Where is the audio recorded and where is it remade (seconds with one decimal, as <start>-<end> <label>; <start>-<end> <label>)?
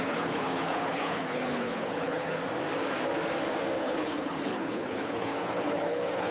0.0-2.4 remade; 2.4-3.8 recorded; 3.8-6.3 remade